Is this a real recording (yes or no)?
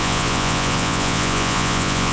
no